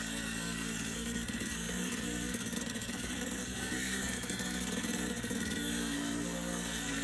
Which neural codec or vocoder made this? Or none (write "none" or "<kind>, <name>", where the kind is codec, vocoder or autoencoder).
codec, SNAC